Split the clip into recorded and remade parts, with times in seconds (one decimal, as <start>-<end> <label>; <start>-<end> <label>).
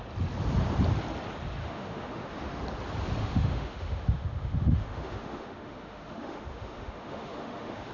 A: 0.0-1.6 recorded; 1.6-2.6 remade; 2.6-3.2 recorded; 3.2-7.9 remade